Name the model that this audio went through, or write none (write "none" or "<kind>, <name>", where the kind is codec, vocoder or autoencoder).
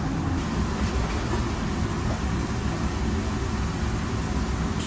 none